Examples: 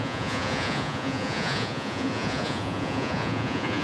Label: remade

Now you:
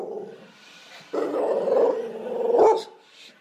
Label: recorded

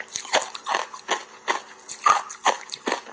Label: recorded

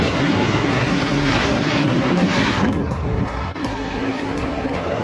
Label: remade